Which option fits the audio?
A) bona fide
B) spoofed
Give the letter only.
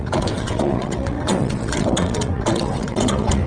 B